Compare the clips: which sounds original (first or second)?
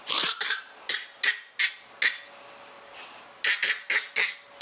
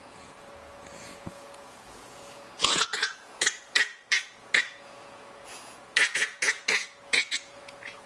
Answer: first